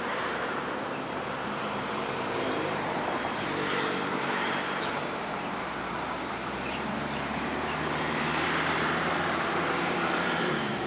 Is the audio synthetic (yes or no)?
yes